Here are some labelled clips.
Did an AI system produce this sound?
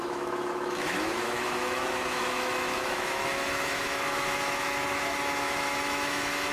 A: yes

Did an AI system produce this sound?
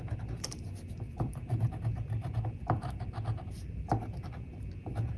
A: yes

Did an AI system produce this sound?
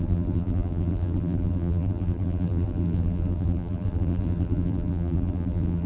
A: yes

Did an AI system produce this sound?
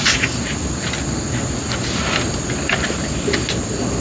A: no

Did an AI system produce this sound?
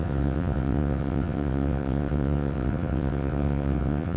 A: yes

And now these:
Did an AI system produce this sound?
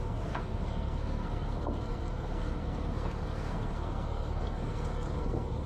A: yes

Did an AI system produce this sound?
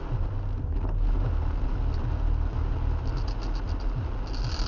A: no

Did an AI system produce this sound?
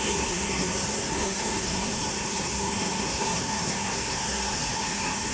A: yes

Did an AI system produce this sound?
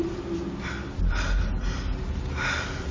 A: no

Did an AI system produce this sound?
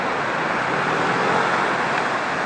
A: no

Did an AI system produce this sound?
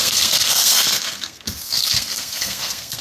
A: yes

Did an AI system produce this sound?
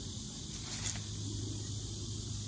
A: no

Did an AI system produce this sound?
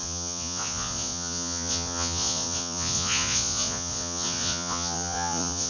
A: yes